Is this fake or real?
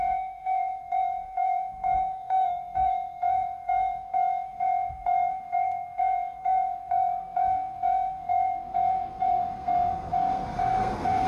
fake